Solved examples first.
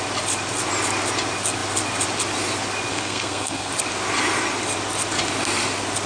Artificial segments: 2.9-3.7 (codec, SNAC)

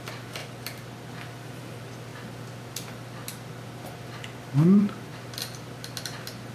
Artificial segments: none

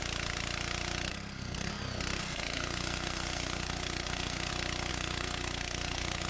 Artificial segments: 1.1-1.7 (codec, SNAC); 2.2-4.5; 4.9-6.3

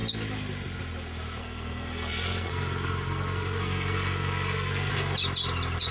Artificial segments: 1.4-4.9 (codec, SNAC)

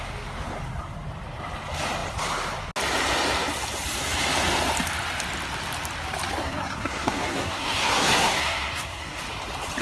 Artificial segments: 6.4-9.2 (codec, SNAC)

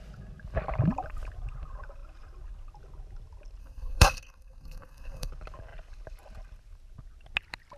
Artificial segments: 3.6-5.3 (codec, SNAC)